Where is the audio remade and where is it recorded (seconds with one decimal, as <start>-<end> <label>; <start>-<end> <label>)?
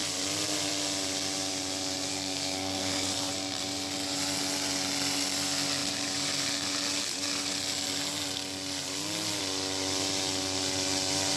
0.0-2.1 recorded; 2.1-3.3 remade; 3.3-11.4 recorded